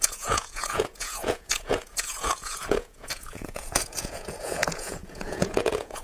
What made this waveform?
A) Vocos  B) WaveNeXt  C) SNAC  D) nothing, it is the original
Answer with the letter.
A